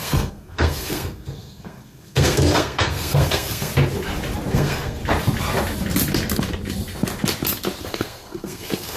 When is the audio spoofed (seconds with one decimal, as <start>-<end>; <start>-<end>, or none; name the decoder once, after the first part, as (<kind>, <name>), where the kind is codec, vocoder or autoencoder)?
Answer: 0.0-3.7 (codec, SNAC); 4.5-5.0; 7.8-9.0